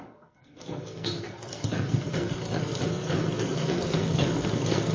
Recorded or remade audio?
remade